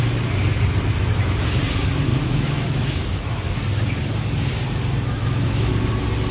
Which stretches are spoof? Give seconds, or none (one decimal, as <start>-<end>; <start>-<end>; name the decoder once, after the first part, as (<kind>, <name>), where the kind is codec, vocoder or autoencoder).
2.1-3.4 (autoencoder, DAC-VAE); 5.2-5.7

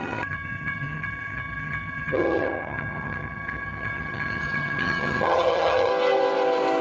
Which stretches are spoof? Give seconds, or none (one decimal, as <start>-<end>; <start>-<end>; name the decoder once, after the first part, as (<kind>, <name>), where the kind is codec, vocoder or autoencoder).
0.0-5.9 (vocoder, HiFi-GAN)